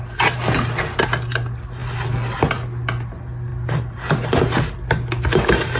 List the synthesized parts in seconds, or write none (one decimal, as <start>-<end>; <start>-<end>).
none